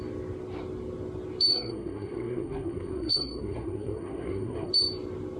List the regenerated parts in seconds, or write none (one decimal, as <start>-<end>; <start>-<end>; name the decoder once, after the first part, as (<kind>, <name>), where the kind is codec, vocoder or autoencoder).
1.5-4.7 (codec, SNAC)